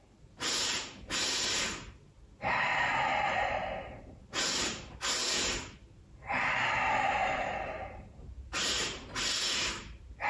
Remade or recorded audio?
remade